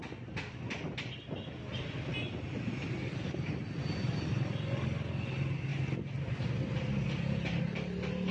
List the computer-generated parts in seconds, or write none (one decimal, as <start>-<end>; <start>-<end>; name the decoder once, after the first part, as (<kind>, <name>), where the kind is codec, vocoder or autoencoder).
none